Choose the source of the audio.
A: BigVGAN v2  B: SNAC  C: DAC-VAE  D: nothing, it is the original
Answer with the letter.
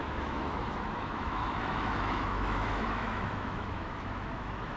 C